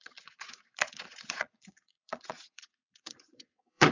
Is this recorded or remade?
remade